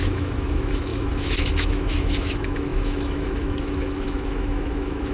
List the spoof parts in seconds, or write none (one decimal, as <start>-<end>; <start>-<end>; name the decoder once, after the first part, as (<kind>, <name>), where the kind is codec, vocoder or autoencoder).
0.0-5.1 (autoencoder, DAC-VAE)